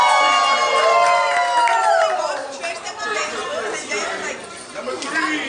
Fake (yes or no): no